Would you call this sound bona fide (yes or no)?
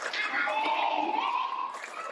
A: yes